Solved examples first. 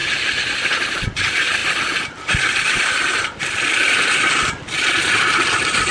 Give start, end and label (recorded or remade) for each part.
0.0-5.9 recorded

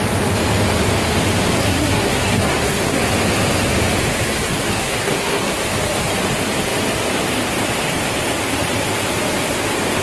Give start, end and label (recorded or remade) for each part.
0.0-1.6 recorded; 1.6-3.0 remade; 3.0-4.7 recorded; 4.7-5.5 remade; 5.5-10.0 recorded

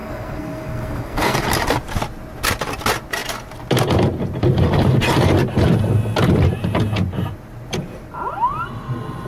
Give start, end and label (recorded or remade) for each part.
0.0-1.4 remade; 1.4-9.3 recorded